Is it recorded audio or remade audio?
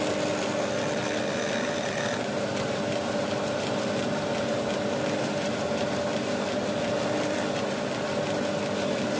recorded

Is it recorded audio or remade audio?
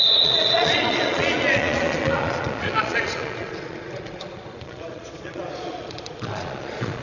remade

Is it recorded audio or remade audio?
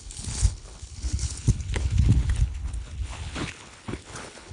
remade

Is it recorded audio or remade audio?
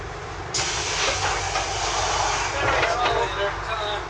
recorded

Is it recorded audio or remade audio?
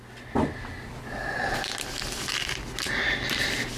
recorded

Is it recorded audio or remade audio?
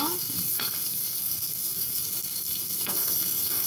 remade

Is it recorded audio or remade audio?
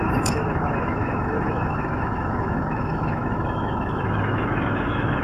remade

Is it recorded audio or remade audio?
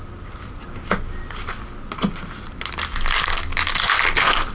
recorded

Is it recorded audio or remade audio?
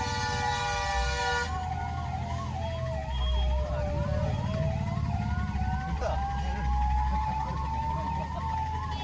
recorded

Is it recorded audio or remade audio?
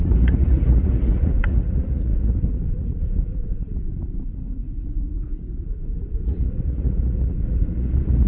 remade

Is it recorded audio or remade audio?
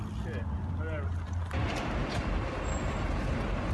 recorded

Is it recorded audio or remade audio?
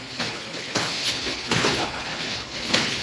remade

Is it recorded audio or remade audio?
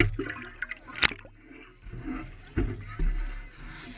recorded